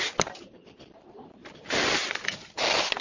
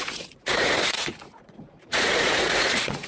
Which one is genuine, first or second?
first